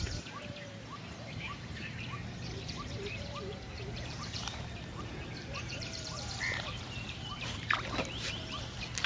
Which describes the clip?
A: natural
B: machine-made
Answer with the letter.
B